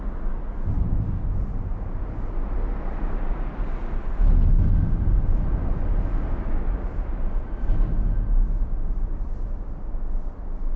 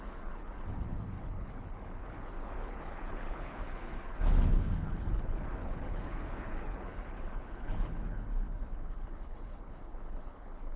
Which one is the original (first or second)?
first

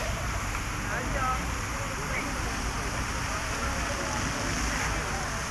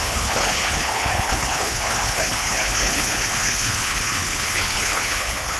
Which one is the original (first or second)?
first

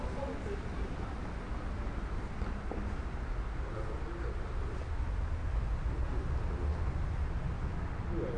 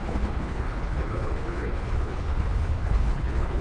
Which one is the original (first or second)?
first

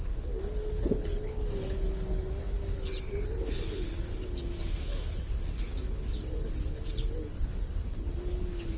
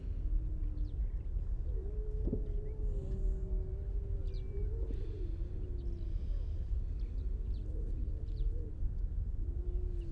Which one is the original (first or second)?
second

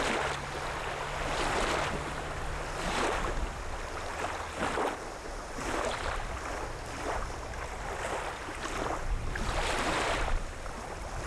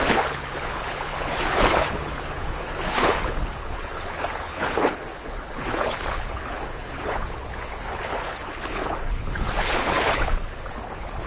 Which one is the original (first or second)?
first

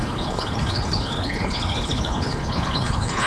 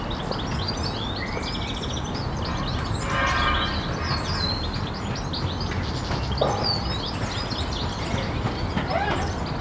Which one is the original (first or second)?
second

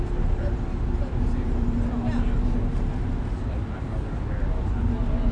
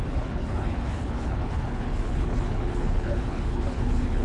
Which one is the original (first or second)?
first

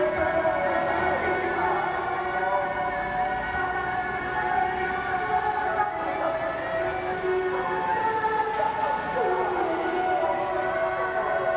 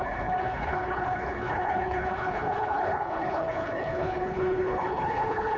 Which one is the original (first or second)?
first